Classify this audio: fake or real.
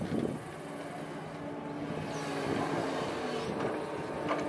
real